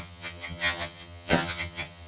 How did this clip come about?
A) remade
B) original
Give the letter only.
A